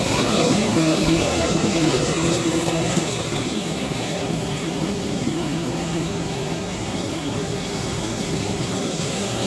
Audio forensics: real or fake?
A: fake